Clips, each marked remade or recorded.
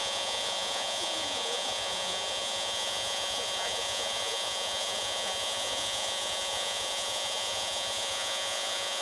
remade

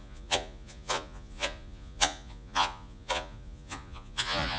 remade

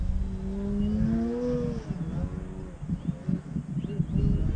recorded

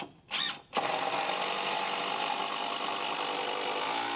recorded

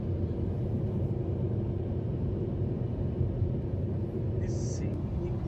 recorded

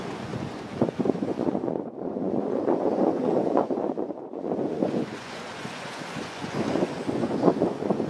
remade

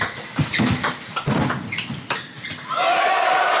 recorded